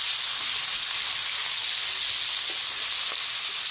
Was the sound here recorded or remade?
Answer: recorded